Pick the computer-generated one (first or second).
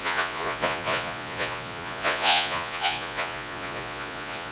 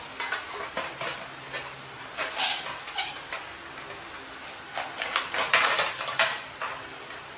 first